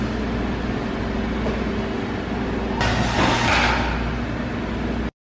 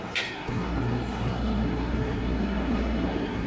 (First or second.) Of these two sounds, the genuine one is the first